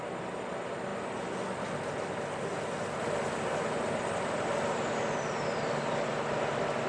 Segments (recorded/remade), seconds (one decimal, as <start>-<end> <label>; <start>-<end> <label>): 0.0-6.9 recorded